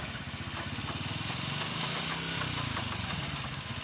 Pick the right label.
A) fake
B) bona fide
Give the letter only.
B